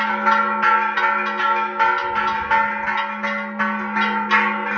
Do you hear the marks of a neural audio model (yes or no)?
no